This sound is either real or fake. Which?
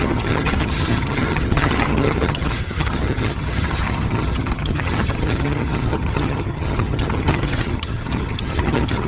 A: fake